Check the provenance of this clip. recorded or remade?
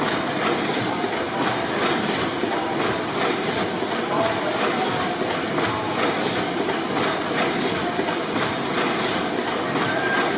recorded